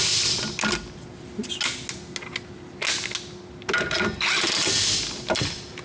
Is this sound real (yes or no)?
yes